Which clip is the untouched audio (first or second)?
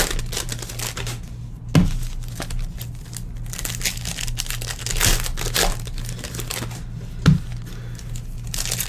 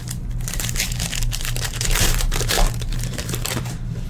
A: first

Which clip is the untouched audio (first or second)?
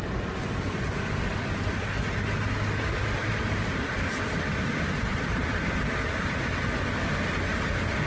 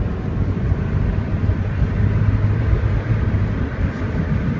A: first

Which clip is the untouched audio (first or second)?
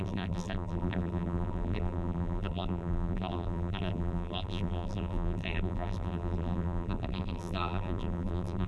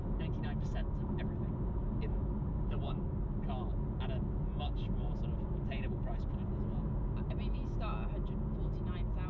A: second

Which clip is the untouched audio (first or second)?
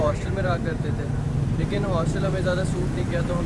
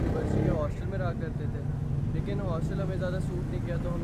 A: second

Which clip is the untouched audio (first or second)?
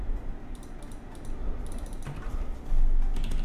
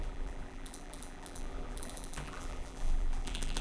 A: first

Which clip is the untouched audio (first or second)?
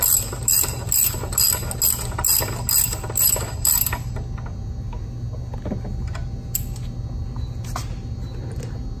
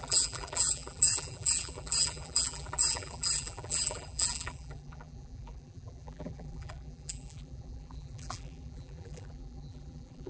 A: first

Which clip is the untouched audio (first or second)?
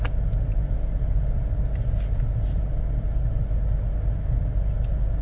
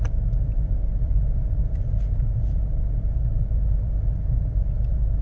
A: first